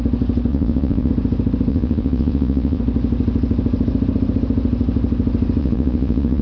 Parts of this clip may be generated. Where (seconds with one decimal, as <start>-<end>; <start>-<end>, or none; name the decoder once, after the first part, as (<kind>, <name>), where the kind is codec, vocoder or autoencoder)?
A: 0.5-1.1 (vocoder, Vocos); 1.7-2.8; 5.6-6.4